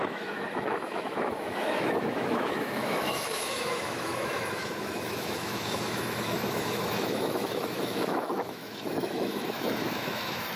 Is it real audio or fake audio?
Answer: fake